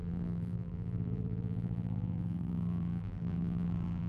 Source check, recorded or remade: remade